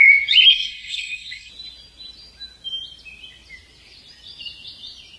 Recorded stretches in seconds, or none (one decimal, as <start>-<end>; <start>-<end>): 0.0-0.5; 1.5-5.2